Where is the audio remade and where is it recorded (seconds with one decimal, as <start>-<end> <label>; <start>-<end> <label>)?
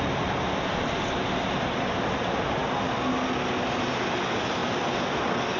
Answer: 0.0-5.6 recorded